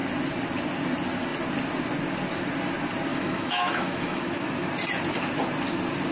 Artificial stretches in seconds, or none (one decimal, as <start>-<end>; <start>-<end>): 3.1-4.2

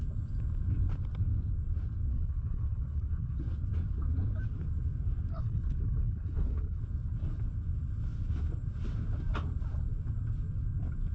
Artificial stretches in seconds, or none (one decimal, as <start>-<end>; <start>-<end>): 2.1-3.4; 5.3-6.8

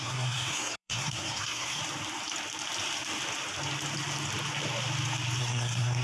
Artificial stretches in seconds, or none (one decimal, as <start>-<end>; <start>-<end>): 0.0-1.8; 5.4-6.0

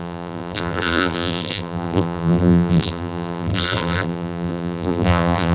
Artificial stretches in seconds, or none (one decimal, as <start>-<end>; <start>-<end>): 0.0-5.5

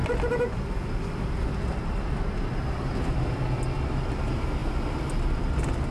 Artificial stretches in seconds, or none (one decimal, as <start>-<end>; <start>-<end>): none